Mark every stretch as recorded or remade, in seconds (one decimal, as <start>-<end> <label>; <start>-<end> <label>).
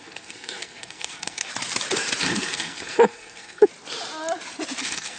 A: 0.0-1.5 remade; 1.5-2.2 recorded; 2.2-3.7 remade; 3.7-4.8 recorded; 4.8-5.2 remade